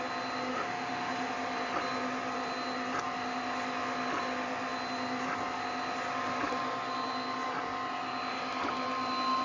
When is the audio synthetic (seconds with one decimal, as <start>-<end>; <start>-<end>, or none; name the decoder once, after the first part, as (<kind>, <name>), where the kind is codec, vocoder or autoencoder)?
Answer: 0.5-1.3 (autoencoder, DAC-VAE)